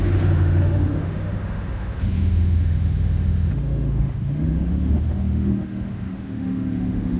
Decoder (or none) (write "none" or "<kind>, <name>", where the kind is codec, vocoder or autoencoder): autoencoder, DAC-VAE